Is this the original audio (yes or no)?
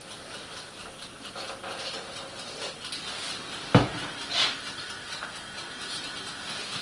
yes